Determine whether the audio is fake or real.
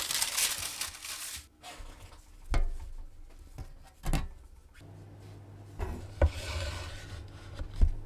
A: real